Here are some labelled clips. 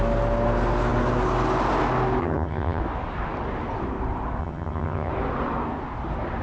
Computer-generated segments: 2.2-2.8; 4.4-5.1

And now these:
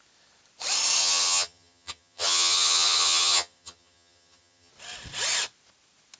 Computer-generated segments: 1.0-4.7

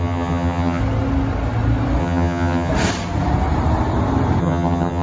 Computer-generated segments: 0.0-0.8; 2.0-2.7; 4.4-5.0

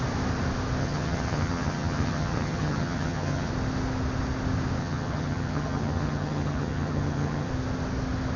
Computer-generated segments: 0.8-3.5; 4.8-7.5

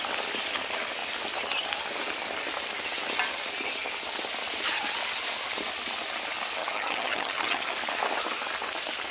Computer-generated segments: 6.6-7.7

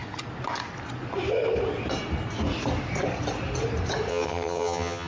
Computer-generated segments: 4.1-5.1

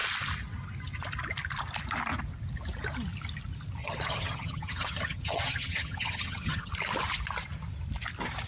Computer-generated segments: 3.8-6.7

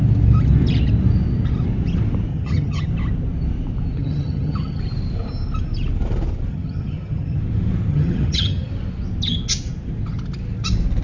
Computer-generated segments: 2.3-2.9; 4.0-4.8; 6.5-7.4; 7.9-8.7